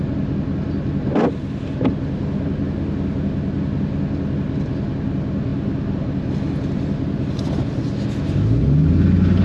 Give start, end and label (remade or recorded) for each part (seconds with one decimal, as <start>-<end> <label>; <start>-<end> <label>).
0.0-9.4 recorded